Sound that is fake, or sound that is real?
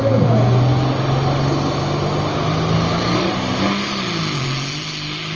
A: real